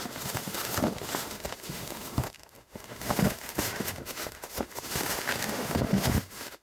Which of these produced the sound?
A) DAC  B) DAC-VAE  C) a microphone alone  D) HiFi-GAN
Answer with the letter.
B